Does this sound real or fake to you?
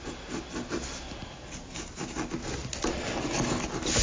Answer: real